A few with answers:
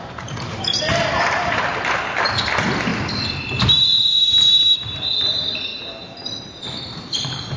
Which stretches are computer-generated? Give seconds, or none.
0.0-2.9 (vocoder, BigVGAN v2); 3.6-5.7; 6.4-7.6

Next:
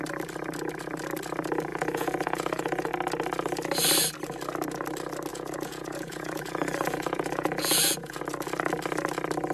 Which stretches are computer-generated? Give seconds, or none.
1.7-2.9 (vocoder, Vocos); 5.3-8.2

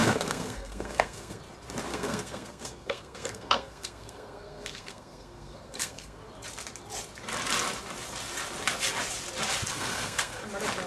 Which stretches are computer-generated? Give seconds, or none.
0.0-1.4 (codec, SNAC); 1.9-6.2; 9.7-10.4

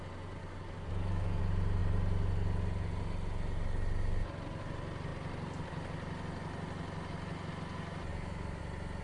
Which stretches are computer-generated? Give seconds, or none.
0.4-1.4 (codec, DAC); 8.1-8.6

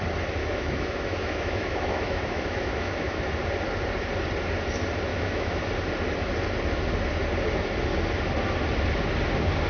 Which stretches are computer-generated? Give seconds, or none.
0.4-3.2 (autoencoder, DAC-VAE); 5.1-5.7

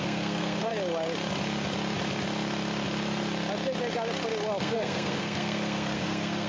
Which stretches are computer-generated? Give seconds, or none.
0.0-0.7 (codec, SNAC); 4.6-6.5